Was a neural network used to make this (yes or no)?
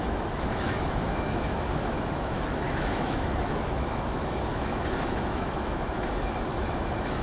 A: yes